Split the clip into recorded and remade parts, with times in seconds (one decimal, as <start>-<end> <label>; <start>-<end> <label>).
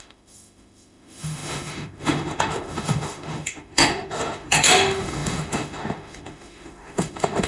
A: 0.0-7.5 remade